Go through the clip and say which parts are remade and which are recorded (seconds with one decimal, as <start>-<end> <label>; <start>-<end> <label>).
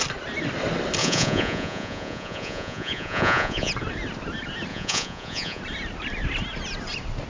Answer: 0.0-1.0 recorded; 1.0-3.7 remade; 3.7-4.7 recorded; 4.7-5.6 remade; 5.6-7.3 recorded